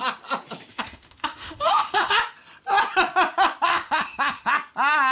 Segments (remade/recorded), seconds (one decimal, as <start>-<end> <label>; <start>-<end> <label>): 0.0-0.7 recorded; 0.7-2.2 remade; 2.2-3.7 recorded; 3.7-4.5 remade; 4.5-5.1 recorded